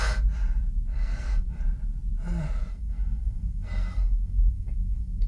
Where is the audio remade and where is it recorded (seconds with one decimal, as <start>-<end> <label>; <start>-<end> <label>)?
0.0-0.9 recorded; 0.9-1.6 remade; 1.6-2.7 recorded; 2.7-5.3 remade